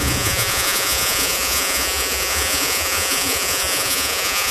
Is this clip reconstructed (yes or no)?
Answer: yes